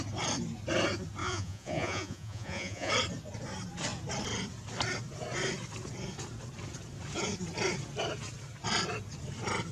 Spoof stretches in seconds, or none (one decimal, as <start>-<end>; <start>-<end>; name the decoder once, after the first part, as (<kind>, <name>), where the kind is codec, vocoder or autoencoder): 1.2-2.9 (vocoder, Vocos)